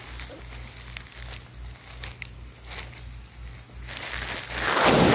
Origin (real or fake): real